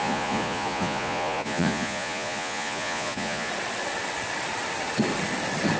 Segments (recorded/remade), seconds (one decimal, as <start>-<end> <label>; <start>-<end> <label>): 0.0-3.5 remade; 3.5-5.8 recorded